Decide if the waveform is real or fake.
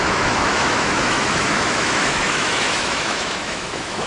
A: fake